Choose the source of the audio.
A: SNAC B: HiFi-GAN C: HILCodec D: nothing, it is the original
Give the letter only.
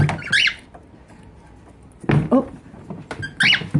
D